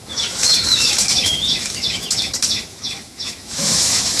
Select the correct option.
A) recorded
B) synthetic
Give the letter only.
B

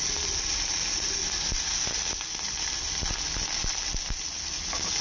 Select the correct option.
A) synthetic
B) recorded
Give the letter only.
B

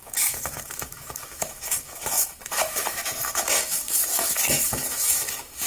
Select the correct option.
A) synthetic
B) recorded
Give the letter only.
A